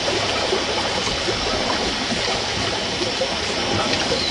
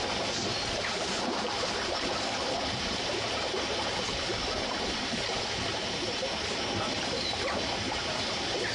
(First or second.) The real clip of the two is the first